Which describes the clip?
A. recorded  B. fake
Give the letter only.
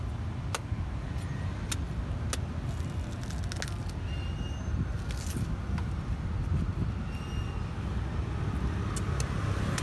A